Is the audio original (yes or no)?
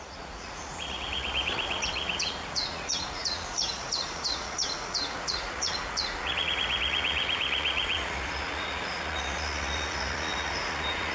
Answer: no